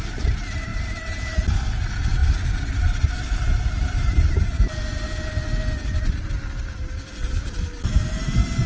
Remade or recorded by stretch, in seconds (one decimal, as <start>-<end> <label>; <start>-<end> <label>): 0.0-8.7 recorded

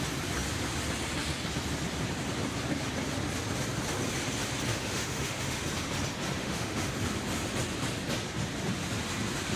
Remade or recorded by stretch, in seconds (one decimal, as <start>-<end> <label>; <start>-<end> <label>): 0.0-4.7 recorded; 4.7-5.6 remade; 5.6-6.4 recorded; 6.4-6.9 remade; 6.9-9.6 recorded